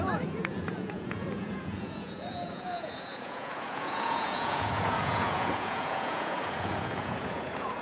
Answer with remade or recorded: remade